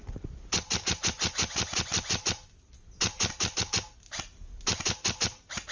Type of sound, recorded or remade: recorded